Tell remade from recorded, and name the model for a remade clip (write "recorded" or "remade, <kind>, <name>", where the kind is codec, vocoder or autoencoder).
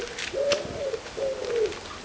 recorded